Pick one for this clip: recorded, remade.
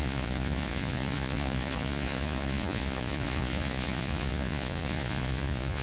remade